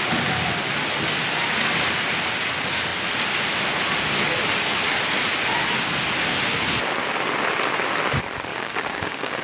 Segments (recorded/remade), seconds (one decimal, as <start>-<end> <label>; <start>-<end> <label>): 0.0-8.5 recorded; 8.5-9.4 remade